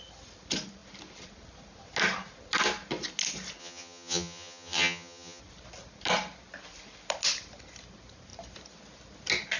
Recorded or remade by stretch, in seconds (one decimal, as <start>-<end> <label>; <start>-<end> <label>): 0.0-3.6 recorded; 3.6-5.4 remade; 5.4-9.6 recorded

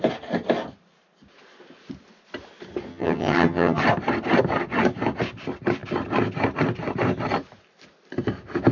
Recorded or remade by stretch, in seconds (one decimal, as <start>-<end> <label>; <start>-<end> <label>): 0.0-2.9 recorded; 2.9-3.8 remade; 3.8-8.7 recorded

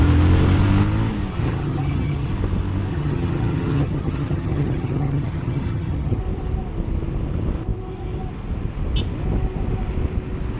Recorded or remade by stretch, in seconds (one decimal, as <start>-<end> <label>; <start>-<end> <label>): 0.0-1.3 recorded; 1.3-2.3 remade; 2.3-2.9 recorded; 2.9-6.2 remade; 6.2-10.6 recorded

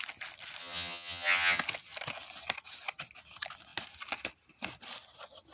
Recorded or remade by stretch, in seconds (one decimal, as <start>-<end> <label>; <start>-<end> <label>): 0.0-0.6 recorded; 0.6-1.6 remade; 1.6-5.5 recorded

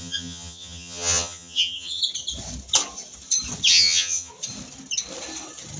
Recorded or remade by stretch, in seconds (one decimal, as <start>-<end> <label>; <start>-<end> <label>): 0.0-2.0 remade; 2.0-3.7 recorded; 3.7-4.3 remade; 4.3-5.8 recorded